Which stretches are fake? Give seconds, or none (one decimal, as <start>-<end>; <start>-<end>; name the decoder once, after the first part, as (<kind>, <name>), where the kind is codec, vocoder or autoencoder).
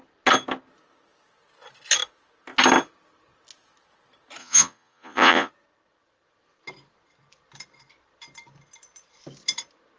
4.4-5.5 (vocoder, Vocos)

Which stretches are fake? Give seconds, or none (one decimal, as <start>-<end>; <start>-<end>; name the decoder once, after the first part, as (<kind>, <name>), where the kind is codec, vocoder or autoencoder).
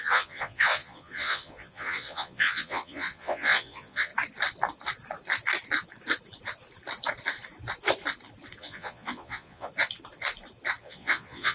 0.0-4.1 (vocoder, Vocos); 8.6-9.7; 10.8-11.5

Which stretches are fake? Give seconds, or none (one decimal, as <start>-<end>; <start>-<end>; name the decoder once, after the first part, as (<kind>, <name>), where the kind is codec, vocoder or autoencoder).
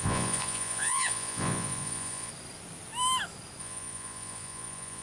0.0-2.3 (vocoder, Vocos); 3.6-5.0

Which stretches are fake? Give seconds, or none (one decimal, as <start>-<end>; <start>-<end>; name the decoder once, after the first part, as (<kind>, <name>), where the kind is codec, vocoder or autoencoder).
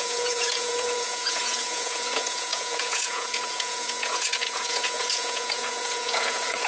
0.0-6.7 (vocoder, Vocos)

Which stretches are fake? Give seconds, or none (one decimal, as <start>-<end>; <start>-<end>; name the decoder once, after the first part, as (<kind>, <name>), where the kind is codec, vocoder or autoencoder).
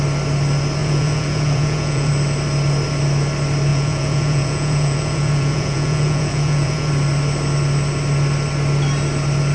0.8-2.1 (vocoder, Vocos); 3.7-6.9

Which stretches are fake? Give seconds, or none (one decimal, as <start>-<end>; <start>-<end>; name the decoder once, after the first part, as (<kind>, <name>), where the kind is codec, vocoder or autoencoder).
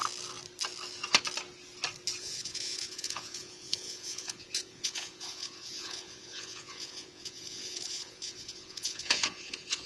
2.2-9.9 (vocoder, Vocos)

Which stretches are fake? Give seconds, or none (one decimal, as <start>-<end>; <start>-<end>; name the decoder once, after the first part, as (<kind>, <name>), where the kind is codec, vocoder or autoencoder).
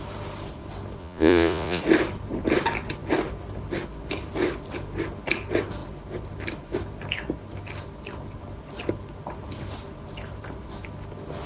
1.0-1.8 (vocoder, Vocos)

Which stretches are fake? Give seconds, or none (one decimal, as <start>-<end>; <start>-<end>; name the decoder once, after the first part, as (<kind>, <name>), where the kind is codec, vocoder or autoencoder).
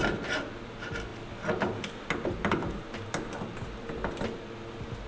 none